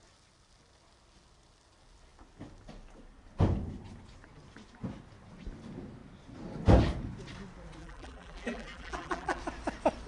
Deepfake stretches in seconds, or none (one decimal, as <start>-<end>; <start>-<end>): 7.8-9.4